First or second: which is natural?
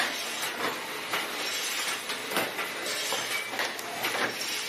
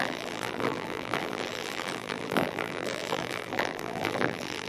first